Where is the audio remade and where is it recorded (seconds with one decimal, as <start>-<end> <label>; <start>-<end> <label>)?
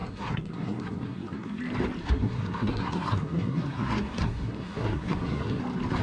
0.0-1.6 remade; 1.6-2.0 recorded; 2.0-5.6 remade; 5.6-6.0 recorded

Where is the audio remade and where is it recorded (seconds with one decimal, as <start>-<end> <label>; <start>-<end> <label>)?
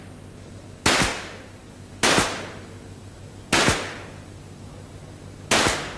0.0-1.1 recorded; 1.1-1.7 remade; 1.7-6.0 recorded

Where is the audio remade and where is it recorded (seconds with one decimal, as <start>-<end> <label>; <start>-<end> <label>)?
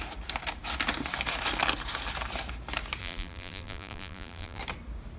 0.0-3.0 recorded; 3.0-4.6 remade; 4.6-5.2 recorded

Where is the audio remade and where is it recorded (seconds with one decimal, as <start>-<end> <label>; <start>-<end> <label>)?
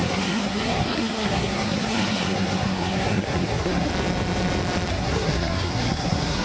0.0-3.9 remade; 3.9-4.9 recorded; 4.9-6.4 remade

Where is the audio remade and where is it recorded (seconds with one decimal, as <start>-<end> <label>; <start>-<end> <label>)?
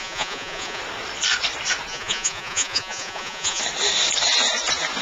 0.0-0.8 remade; 0.8-1.9 recorded; 1.9-3.6 remade; 3.6-5.0 recorded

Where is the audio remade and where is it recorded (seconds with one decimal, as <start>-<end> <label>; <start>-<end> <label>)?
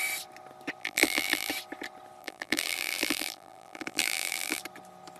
0.0-0.8 recorded; 0.8-1.5 remade; 1.5-2.2 recorded; 2.2-4.6 remade; 4.6-5.2 recorded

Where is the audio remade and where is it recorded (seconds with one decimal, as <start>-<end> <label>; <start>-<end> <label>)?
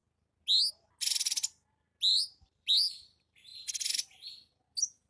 0.0-2.1 recorded; 2.1-2.7 remade; 2.7-5.1 recorded